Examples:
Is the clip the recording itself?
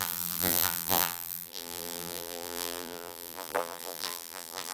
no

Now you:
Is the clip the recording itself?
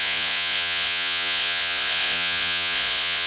no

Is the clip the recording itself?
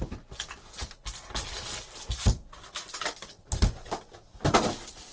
yes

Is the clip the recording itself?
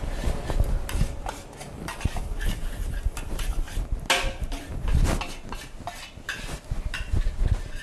yes